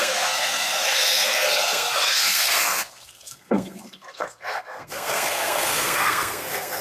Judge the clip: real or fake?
fake